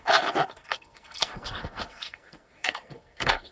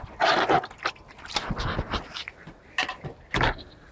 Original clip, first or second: second